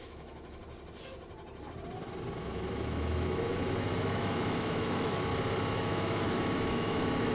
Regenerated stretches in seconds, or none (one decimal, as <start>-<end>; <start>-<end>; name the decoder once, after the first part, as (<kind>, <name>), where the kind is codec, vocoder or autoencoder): 0.0-0.6 (autoencoder, DAC-VAE); 2.4-5.3; 5.8-7.3